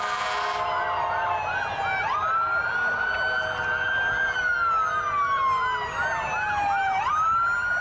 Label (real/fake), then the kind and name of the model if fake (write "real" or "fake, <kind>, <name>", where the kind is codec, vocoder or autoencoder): real